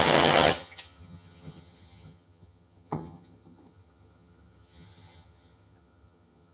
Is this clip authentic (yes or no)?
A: no